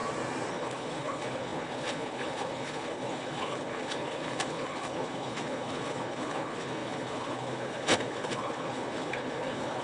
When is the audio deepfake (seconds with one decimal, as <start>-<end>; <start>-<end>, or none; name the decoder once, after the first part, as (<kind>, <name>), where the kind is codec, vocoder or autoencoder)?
0.5-9.8 (codec, HILCodec)